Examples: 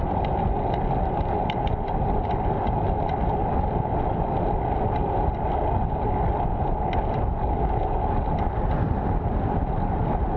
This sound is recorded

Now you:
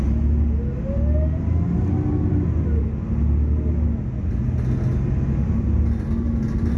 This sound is recorded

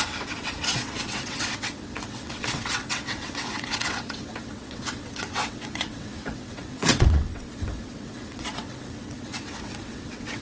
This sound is remade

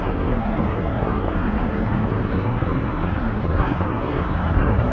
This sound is remade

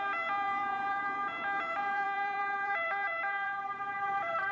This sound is remade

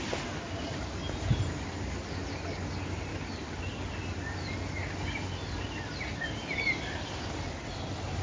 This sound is recorded